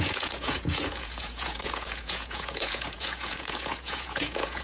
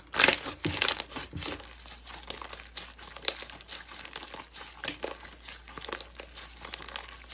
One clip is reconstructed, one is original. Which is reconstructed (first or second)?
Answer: first